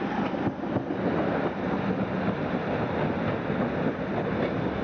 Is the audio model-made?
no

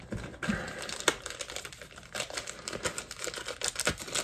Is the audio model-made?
no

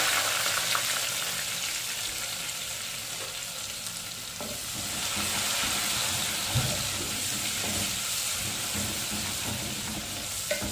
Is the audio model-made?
no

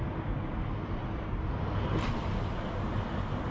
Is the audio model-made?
no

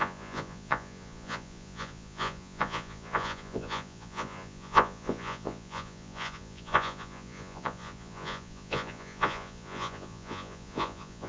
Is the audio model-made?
yes